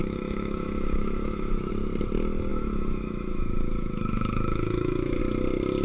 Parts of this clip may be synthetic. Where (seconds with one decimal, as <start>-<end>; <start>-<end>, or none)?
0.0-1.7; 2.5-5.2